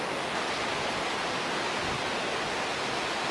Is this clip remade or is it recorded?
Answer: recorded